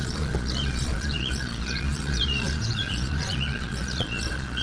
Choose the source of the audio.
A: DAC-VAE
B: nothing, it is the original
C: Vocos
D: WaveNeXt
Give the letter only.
C